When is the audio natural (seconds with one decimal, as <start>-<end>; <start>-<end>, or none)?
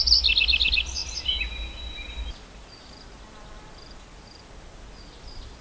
0.0-5.6